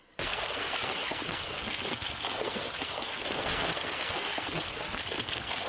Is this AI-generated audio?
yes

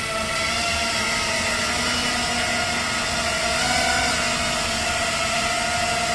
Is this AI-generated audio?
no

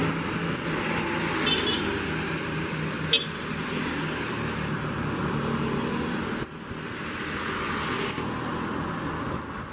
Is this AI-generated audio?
no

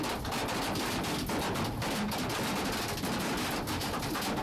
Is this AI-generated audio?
no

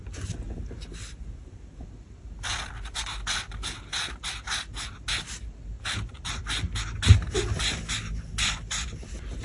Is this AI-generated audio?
no